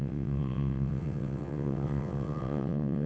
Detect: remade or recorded remade